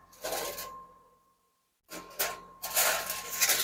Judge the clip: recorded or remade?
recorded